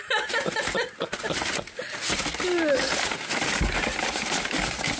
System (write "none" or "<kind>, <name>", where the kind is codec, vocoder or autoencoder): none